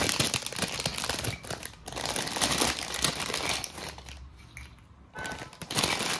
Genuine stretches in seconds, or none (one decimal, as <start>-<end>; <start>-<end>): 0.0-0.9; 4.4-6.2